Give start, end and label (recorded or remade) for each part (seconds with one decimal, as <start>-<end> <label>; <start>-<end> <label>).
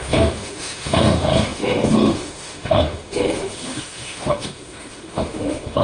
0.0-5.8 remade